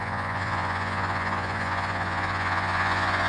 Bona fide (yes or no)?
no